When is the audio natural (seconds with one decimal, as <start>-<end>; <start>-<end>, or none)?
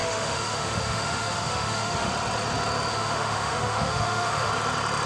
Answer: 2.1-2.9; 4.5-5.1